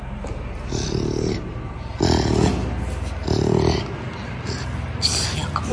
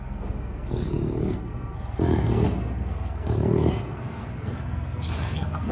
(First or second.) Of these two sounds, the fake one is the second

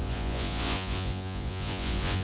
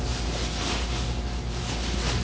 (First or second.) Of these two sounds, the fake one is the first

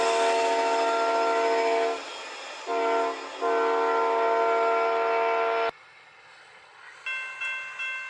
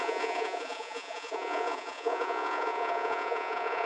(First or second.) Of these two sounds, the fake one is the second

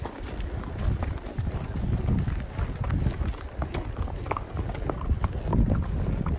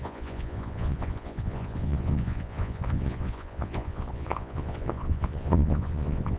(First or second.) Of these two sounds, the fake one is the second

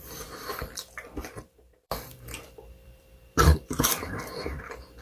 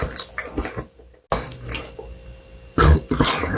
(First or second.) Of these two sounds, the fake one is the first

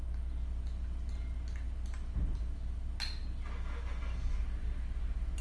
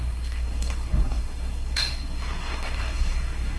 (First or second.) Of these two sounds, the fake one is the second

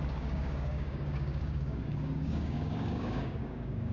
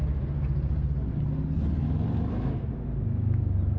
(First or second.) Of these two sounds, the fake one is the first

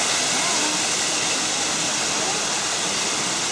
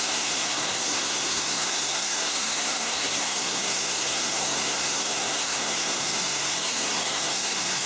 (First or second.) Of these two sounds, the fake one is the second